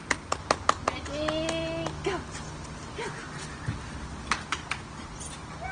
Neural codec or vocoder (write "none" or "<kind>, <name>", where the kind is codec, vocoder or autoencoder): none